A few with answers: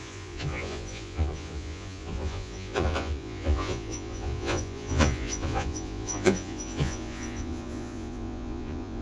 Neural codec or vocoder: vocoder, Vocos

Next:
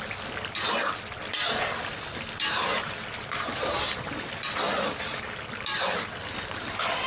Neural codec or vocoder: none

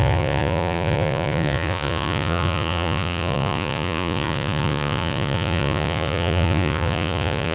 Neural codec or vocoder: vocoder, Vocos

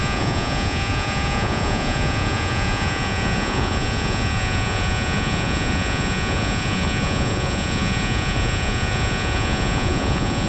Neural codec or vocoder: vocoder, Vocos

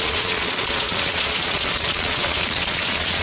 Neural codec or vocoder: vocoder, Vocos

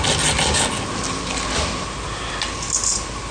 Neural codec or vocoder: none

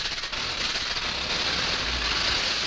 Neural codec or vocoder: none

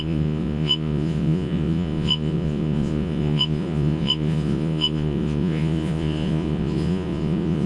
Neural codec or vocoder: vocoder, Vocos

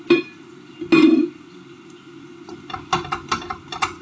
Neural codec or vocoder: none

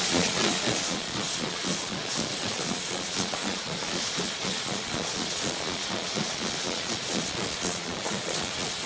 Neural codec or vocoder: vocoder, Vocos